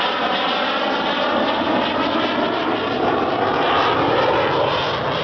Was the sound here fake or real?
real